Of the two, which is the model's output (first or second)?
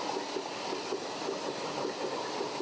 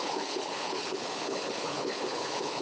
second